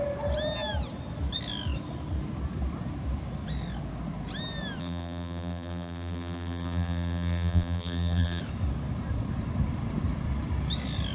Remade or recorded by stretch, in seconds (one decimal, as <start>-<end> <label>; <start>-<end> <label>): 0.0-4.8 recorded; 4.8-8.4 remade; 8.4-11.1 recorded